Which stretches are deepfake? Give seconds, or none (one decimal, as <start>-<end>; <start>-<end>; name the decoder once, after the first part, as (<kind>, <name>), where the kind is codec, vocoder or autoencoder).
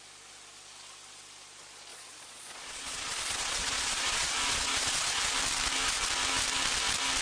1.9-5.2 (vocoder, Vocos)